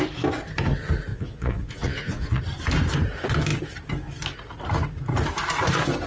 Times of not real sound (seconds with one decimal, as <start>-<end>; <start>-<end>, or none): 1.1-2.4